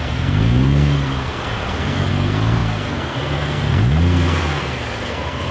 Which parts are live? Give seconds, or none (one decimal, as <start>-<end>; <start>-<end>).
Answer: none